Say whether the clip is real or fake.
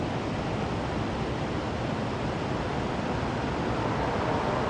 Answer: real